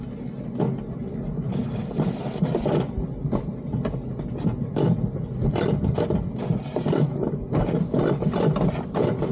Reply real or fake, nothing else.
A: real